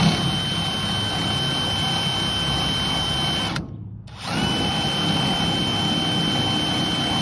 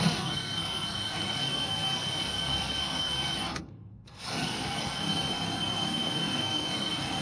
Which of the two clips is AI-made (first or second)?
second